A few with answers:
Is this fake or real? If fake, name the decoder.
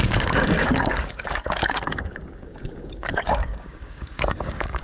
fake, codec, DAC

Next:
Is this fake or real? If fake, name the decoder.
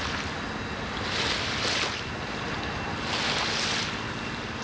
real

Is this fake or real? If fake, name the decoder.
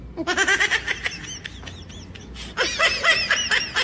real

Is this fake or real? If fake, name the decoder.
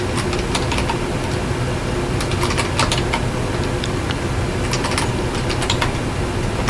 real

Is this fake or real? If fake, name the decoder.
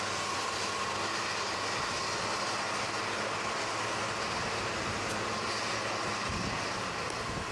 real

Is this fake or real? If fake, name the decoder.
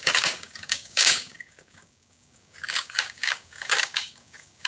fake, codec, DAC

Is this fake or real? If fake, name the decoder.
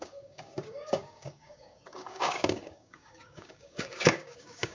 fake, codec, DAC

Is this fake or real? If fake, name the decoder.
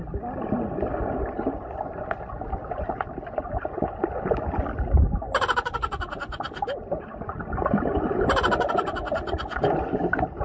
real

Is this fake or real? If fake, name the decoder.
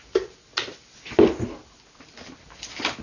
real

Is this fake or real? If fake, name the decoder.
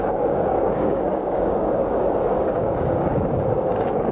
fake, codec, DAC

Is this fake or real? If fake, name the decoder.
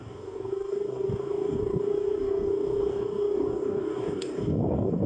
fake, codec, DAC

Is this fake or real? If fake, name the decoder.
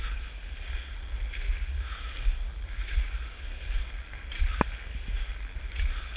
real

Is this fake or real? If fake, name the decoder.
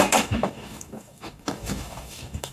fake, codec, DAC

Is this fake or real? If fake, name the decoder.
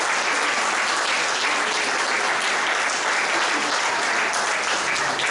real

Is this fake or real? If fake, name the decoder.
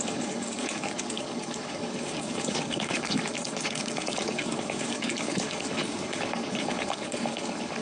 fake, codec, DAC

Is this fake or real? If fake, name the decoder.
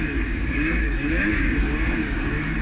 fake, codec, DAC